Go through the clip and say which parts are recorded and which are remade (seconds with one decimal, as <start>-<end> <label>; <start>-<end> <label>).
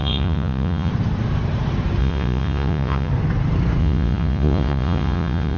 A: 0.0-0.9 remade; 0.9-2.0 recorded; 2.0-3.1 remade; 3.1-3.8 recorded; 3.8-5.6 remade